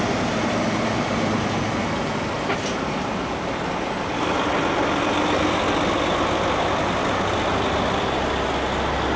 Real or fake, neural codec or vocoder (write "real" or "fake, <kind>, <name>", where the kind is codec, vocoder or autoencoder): real